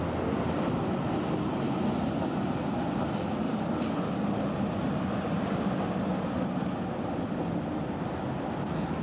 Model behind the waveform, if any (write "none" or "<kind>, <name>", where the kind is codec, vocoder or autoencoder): none